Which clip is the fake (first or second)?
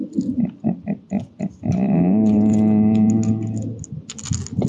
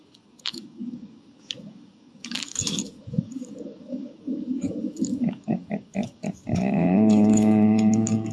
second